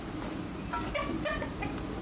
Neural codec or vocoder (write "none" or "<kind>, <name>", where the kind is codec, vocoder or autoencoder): none